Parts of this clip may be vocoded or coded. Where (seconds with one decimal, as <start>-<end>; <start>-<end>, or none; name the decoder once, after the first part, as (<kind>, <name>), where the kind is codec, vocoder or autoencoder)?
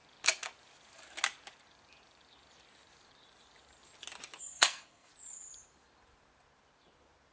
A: 4.4-5.1 (codec, SNAC)